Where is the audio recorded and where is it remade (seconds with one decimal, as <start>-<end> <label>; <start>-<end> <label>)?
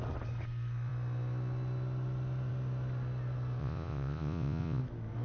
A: 0.0-3.6 recorded; 3.6-4.8 remade; 4.8-5.2 recorded